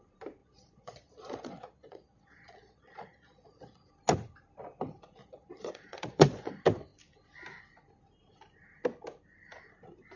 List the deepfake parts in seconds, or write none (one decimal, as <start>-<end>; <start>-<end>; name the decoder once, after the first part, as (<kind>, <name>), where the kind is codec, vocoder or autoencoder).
0.4-3.9 (vocoder, Vocos); 5.2-6.5